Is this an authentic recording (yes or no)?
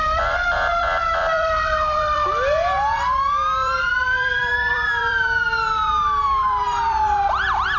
no